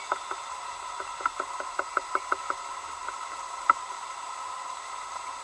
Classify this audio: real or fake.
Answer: real